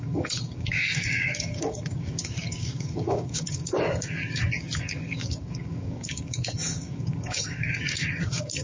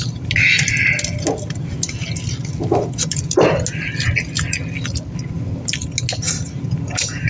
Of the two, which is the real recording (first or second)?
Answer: second